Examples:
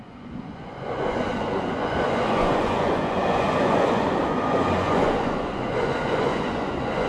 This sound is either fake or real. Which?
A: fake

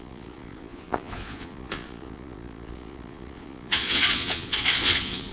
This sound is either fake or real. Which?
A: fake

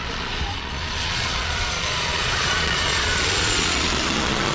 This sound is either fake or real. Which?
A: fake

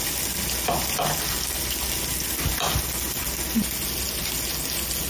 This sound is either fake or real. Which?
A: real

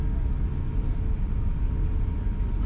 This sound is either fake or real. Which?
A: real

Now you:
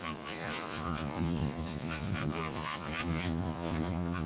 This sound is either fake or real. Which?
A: fake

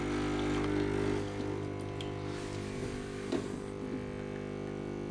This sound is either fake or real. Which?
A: real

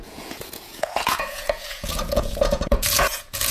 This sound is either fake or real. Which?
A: fake